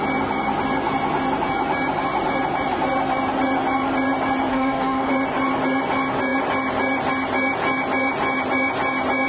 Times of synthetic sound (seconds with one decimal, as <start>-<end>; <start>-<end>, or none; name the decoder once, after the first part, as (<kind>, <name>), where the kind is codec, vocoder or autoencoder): 4.5-5.1 (autoencoder, DAC-VAE)